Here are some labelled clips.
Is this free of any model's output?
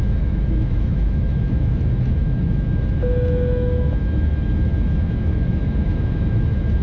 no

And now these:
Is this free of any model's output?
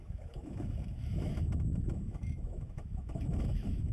no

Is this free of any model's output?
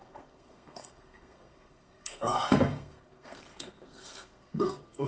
no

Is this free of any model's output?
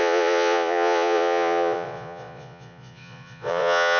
no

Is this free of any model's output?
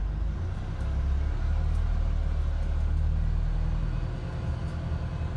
yes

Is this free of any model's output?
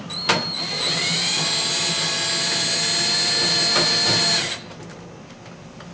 yes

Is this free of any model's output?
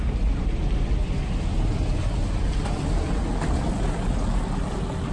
yes